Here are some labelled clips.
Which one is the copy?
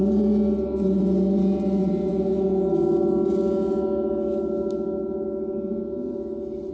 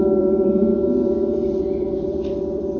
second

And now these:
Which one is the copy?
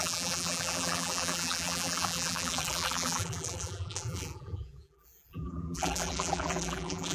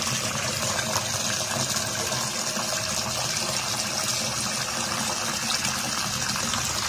first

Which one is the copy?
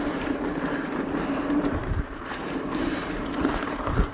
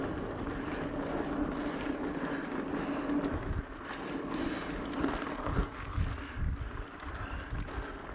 first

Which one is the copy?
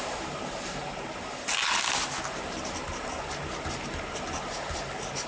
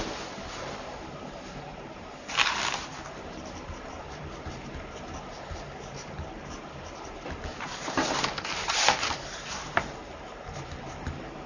second